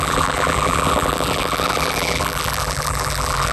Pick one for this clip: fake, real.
fake